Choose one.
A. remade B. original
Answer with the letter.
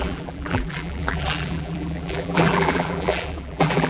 A